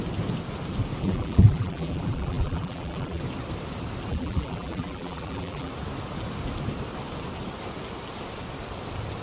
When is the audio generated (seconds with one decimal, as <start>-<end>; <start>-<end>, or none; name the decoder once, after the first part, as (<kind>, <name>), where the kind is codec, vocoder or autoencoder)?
1.0-3.2 (vocoder, BigVGAN v2); 4.1-5.7